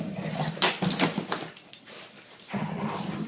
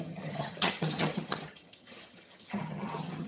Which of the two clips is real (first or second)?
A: first